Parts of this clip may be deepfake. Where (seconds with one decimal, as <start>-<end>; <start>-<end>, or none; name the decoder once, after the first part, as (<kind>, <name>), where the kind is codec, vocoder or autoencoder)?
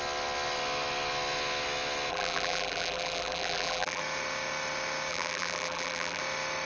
2.1-4.0 (vocoder, BigVGAN v2); 5.1-6.2